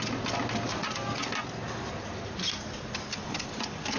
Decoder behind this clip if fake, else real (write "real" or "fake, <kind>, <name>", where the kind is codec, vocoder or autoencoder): real